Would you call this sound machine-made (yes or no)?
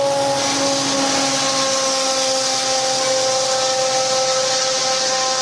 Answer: no